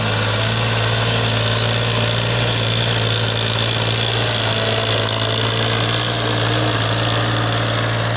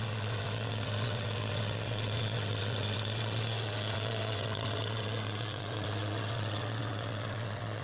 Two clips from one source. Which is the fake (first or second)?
second